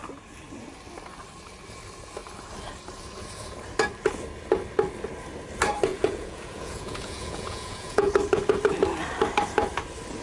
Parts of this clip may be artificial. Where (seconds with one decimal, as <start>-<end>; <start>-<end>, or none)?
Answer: 5.9-8.1